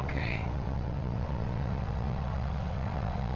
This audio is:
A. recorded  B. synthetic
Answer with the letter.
B